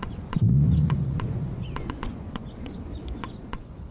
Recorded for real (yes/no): no